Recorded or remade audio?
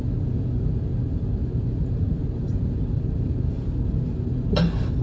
recorded